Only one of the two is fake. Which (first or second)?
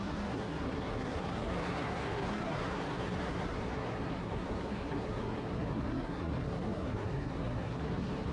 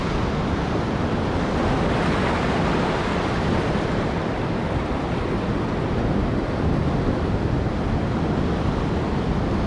first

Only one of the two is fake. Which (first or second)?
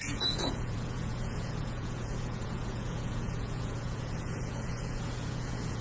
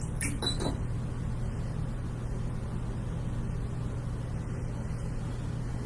first